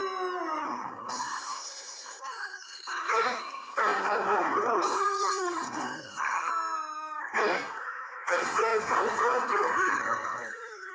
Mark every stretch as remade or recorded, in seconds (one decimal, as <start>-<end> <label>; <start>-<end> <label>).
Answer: 0.0-0.6 recorded; 0.6-6.5 remade; 6.5-7.2 recorded; 7.2-10.9 remade